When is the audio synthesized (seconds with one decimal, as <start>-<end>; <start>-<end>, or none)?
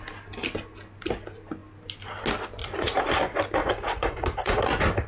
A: 2.6-3.2; 3.6-4.6